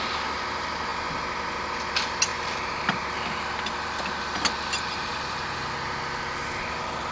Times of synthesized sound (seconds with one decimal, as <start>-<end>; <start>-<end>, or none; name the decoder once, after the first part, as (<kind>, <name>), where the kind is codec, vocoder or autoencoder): none